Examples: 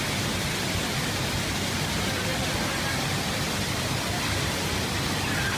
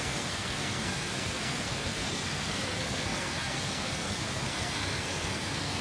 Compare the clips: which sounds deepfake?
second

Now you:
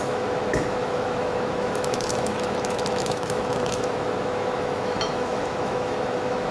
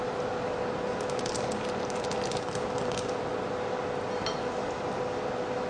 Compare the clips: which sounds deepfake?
first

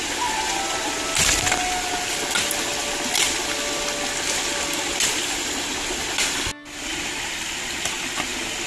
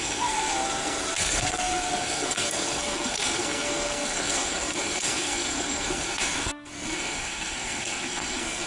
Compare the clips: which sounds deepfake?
second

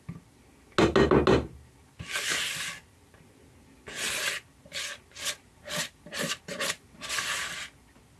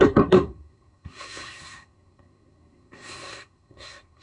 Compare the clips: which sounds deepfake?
second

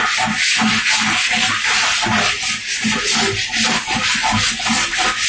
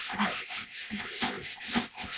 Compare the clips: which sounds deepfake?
second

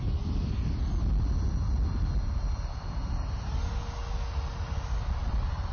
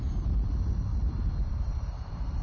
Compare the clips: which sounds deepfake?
second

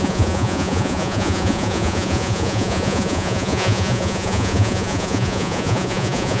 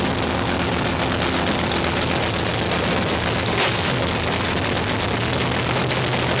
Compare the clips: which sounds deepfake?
first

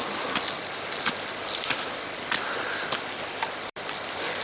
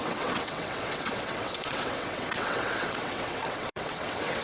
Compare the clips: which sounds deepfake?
second